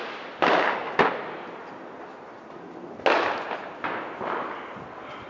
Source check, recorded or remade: recorded